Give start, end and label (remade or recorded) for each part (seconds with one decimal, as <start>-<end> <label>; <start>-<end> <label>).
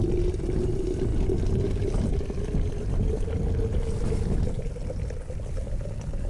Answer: 0.0-6.3 recorded